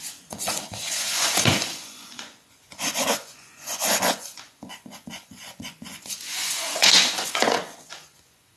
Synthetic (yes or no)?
yes